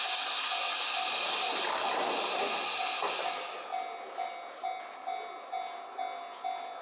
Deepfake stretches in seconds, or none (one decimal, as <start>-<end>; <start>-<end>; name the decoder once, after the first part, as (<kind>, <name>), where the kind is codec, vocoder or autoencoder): none